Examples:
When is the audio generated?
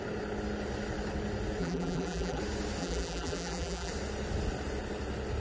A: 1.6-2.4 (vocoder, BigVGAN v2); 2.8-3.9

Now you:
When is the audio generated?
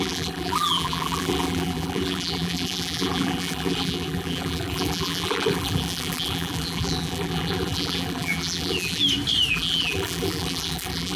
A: 0.0-9.0 (vocoder, BigVGAN v2); 9.5-11.2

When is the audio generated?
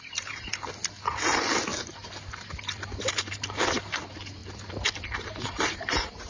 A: 0.0-0.5 (vocoder, BigVGAN v2); 3.0-4.4; 5.2-6.3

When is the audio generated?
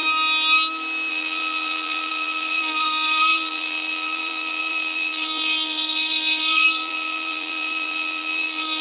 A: 1.1-8.8 (vocoder, BigVGAN v2)